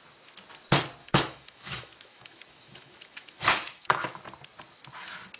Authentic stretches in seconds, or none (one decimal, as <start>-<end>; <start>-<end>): 0.0-1.0; 4.2-5.4